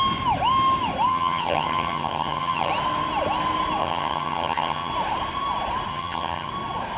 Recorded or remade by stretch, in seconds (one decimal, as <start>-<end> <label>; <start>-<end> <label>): 0.0-1.1 recorded; 1.1-2.7 remade; 2.7-3.8 recorded; 3.8-4.9 remade; 4.9-5.9 recorded; 5.9-6.5 remade; 6.5-7.0 recorded